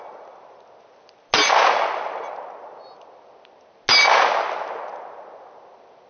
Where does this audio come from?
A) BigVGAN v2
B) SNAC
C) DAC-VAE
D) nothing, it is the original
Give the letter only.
D